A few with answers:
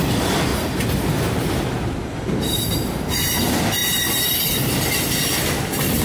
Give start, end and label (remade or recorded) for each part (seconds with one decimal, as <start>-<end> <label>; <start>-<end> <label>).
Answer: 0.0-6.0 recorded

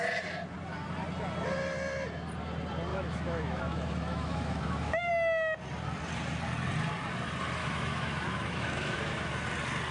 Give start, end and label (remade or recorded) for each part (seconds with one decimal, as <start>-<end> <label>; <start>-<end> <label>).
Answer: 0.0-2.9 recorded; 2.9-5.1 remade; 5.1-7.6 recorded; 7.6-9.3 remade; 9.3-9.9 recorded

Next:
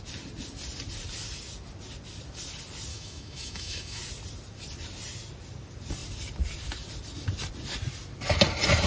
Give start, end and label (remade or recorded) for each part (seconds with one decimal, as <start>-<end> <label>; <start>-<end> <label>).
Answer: 0.0-2.9 recorded; 2.9-4.0 remade; 4.0-8.9 recorded

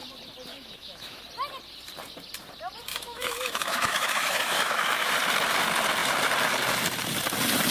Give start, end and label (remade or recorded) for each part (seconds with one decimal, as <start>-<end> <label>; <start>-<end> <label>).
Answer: 0.0-0.5 recorded; 0.5-1.2 remade; 1.2-2.9 recorded; 2.9-5.1 remade; 5.1-7.7 recorded

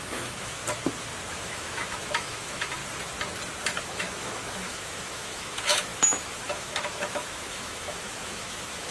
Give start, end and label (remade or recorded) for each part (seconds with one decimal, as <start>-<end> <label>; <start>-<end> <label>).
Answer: 0.0-0.6 remade; 0.6-1.3 recorded; 1.3-2.8 remade; 2.8-3.8 recorded; 3.8-8.9 remade